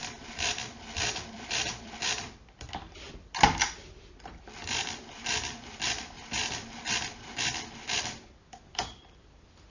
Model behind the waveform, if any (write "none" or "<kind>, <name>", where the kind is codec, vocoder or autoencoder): vocoder, BigVGAN v2